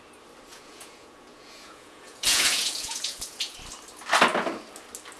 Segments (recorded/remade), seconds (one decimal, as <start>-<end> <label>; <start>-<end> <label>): 0.0-0.5 recorded; 0.5-3.6 remade; 3.6-5.2 recorded